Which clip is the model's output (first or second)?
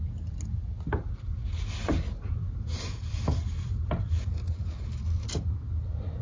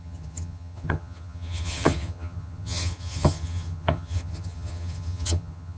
second